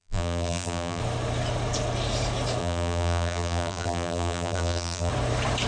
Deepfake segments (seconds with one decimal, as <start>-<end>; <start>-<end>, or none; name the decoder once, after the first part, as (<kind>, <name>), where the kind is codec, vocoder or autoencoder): 0.0-1.0 (vocoder, BigVGAN v2); 2.6-5.1

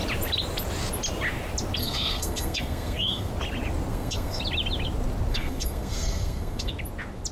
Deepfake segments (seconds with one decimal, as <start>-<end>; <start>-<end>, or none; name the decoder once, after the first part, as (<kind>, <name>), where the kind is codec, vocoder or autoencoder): 1.8-3.3 (codec, SNAC); 3.9-4.4; 5.3-6.7

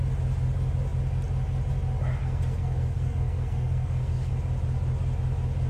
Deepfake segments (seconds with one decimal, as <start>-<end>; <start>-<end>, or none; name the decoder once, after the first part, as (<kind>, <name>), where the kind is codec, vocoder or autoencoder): 2.2-4.3 (codec, SNAC)